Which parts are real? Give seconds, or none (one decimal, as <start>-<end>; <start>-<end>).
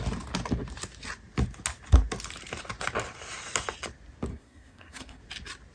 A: 0.0-4.3; 5.2-5.7